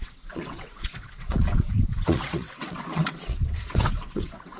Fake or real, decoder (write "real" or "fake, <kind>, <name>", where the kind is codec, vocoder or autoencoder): fake, vocoder, WaveNeXt